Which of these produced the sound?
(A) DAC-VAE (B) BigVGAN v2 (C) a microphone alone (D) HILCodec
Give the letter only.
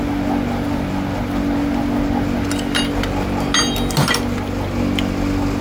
C